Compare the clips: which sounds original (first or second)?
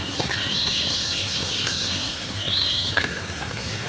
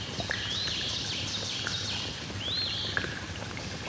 second